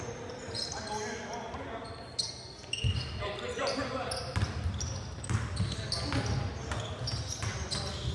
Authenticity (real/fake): real